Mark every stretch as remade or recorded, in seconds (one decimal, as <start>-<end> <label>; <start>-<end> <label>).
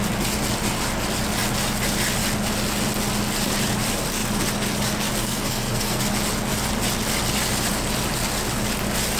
0.0-5.2 recorded; 5.2-6.0 remade; 6.0-9.2 recorded